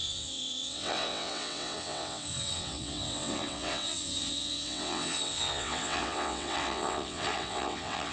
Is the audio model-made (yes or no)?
yes